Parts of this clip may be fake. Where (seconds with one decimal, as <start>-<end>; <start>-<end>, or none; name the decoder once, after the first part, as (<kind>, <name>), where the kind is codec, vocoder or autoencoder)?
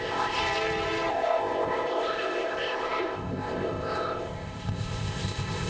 0.0-0.4 (codec, ZipCodec); 1.1-5.7